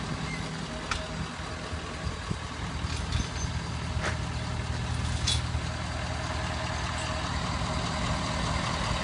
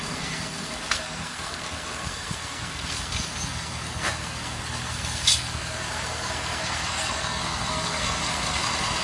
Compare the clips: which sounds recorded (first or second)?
first